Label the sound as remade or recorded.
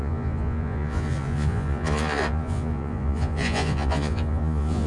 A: remade